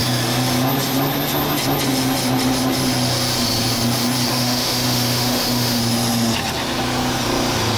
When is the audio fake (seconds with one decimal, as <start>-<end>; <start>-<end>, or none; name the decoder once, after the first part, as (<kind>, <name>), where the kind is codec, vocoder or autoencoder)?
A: 4.3-5.8 (autoencoder, DAC-VAE)